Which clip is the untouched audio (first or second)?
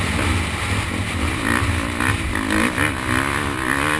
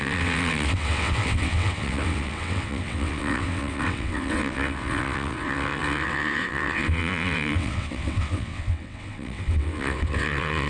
first